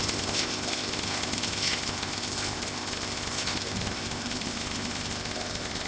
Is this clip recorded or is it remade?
remade